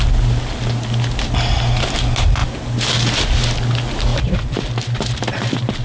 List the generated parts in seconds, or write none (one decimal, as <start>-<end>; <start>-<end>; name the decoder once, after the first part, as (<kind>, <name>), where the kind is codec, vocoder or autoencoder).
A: 4.1-4.9 (vocoder, BigVGAN v2)